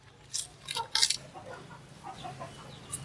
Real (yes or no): yes